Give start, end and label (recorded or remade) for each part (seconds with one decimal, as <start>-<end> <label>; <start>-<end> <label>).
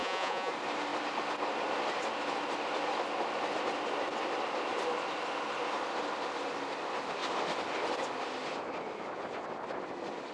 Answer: 0.0-0.5 remade; 0.5-10.3 recorded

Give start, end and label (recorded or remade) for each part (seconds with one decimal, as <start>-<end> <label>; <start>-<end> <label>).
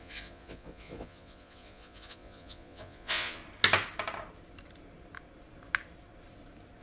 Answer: 0.0-3.4 remade; 3.4-6.8 recorded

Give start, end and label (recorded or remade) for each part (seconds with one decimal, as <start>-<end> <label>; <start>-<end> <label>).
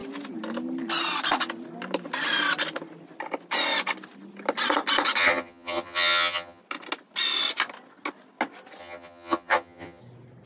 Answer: 0.0-5.2 recorded; 5.2-6.6 remade; 6.6-8.8 recorded; 8.8-10.0 remade; 10.0-10.5 recorded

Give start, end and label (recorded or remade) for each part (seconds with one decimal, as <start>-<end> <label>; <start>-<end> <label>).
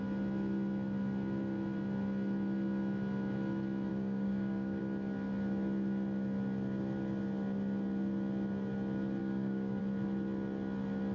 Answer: 0.0-3.9 recorded; 3.9-4.8 remade; 4.8-9.2 recorded; 9.2-9.8 remade; 9.8-11.1 recorded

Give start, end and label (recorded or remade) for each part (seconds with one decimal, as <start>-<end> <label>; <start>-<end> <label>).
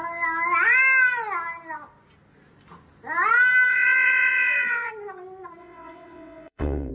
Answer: 0.0-3.7 recorded; 3.7-4.9 remade; 4.9-5.6 recorded; 5.6-6.9 remade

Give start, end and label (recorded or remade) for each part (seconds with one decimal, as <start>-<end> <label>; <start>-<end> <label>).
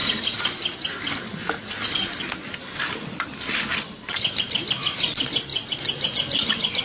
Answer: 0.0-6.8 recorded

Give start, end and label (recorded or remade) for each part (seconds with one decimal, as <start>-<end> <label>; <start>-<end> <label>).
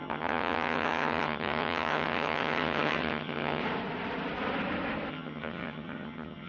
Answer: 0.0-3.6 remade; 3.6-5.1 recorded; 5.1-6.5 remade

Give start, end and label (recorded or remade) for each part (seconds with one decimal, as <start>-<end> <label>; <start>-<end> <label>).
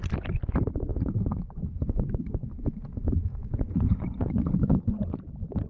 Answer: 0.0-0.9 recorded; 0.9-2.5 remade; 2.5-3.3 recorded; 3.3-5.2 remade; 5.2-5.7 recorded